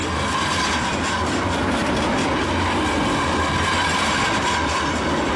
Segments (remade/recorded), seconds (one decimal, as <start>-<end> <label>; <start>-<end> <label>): 0.0-5.4 recorded